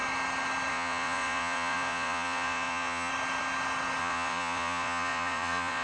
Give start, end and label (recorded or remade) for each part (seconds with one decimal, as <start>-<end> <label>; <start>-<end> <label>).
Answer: 0.0-0.7 recorded; 0.7-3.1 remade; 3.1-4.0 recorded; 4.0-5.8 remade